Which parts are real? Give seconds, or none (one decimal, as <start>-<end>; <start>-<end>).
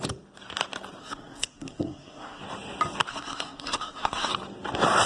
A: 0.0-1.0; 2.4-3.1; 4.3-5.1